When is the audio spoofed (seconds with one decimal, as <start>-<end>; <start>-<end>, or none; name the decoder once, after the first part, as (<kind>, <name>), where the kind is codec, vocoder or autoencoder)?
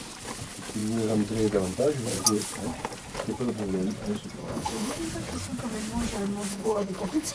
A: 4.4-5.0 (codec, HILCodec); 6.5-7.3